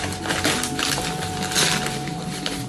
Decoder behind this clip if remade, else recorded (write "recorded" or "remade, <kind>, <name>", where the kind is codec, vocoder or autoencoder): remade, vocoder, BigVGAN v2